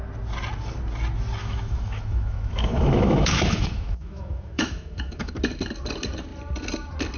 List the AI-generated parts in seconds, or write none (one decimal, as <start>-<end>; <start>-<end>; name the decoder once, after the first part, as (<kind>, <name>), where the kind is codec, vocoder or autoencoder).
1.4-5.3 (autoencoder, DAC-VAE)